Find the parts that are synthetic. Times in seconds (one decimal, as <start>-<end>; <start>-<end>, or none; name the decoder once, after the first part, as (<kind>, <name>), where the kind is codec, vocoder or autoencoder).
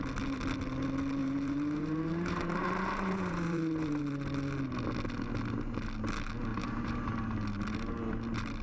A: 1.2-4.0 (vocoder, BigVGAN v2); 6.5-7.1